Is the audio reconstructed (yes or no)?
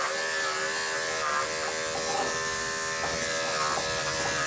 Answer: no